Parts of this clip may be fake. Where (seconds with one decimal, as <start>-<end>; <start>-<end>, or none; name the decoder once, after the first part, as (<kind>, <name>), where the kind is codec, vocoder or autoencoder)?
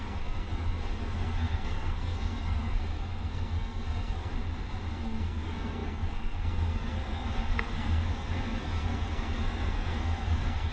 0.0-4.3 (codec, SNAC); 4.9-10.7